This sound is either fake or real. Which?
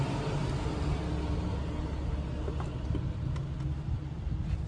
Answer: real